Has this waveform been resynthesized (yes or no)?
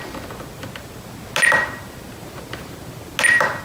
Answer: no